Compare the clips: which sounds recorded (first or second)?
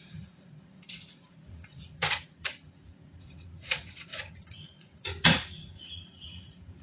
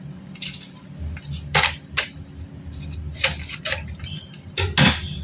second